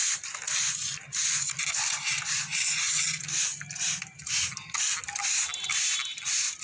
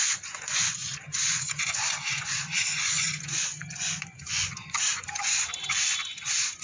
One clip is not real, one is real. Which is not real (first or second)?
second